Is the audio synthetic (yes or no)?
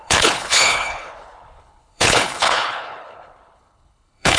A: yes